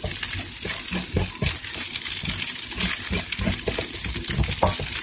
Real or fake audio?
real